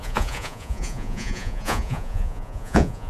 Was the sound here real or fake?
fake